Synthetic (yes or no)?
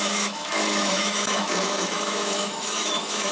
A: yes